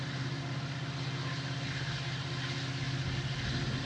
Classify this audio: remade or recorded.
recorded